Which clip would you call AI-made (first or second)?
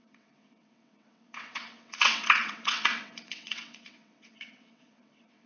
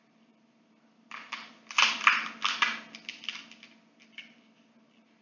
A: first